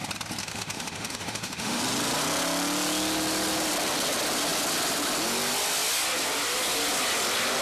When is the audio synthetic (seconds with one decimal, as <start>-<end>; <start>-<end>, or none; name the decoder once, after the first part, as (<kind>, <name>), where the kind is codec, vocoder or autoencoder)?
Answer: 0.4-1.8 (autoencoder, DAC-VAE)